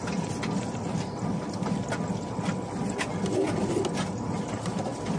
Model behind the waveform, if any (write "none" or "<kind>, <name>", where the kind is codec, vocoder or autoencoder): none